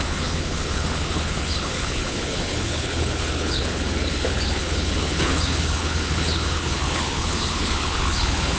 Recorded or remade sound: remade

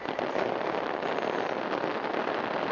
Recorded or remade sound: recorded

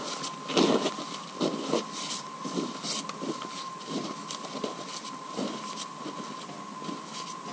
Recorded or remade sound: recorded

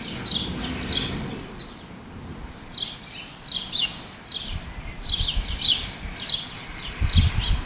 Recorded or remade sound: recorded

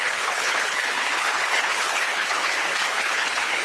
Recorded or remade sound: remade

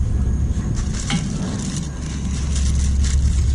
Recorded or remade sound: recorded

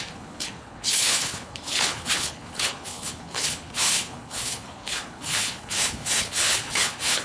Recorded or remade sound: remade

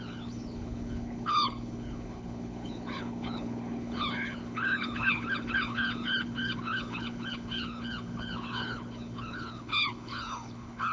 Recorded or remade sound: remade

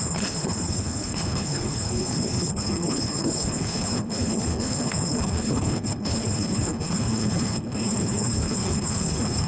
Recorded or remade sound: remade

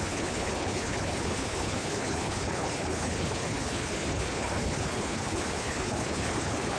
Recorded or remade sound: remade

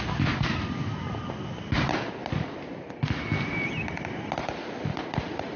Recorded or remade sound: recorded